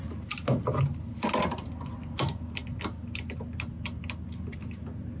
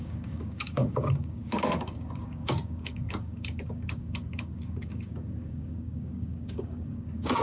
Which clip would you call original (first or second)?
first